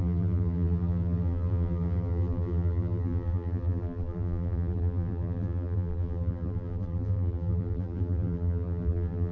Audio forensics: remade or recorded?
remade